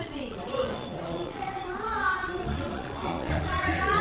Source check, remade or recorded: remade